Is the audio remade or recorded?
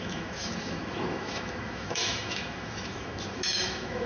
remade